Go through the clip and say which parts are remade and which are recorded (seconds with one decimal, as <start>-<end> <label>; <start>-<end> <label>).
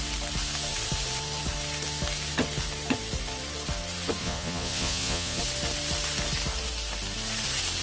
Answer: 0.0-4.2 recorded; 4.2-5.4 remade; 5.4-7.8 recorded